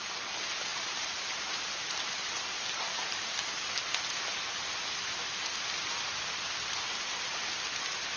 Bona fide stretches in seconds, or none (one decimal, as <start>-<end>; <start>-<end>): 0.0-0.7; 3.5-8.2